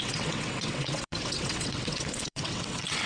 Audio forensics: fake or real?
fake